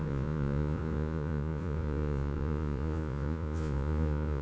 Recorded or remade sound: remade